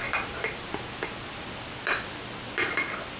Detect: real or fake real